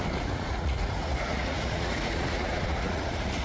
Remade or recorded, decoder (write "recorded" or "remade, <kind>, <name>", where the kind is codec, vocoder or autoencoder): remade, vocoder, Vocos